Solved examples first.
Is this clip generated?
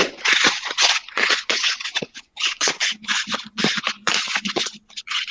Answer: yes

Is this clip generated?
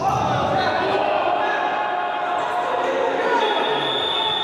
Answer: no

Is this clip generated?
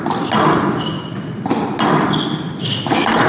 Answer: no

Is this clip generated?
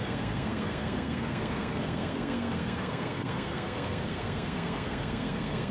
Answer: yes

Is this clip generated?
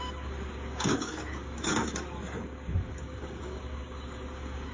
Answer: yes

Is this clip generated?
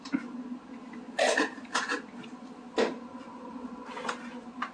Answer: no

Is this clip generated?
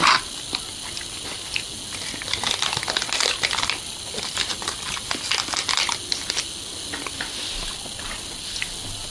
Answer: no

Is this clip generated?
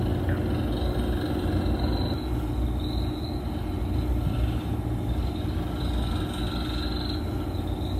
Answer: no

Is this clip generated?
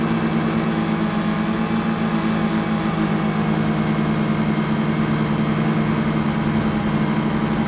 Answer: no